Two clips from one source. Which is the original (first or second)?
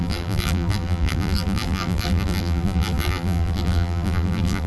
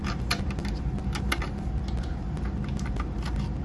second